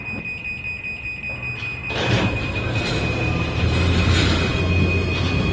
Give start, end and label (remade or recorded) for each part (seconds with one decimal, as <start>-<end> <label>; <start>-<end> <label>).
0.0-1.8 recorded; 1.8-4.6 remade; 4.6-5.5 recorded